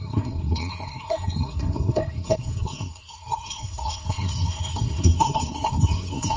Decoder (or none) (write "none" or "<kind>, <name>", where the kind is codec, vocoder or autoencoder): codec, SNAC